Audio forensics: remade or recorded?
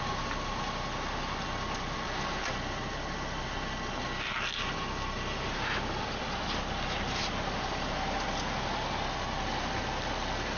recorded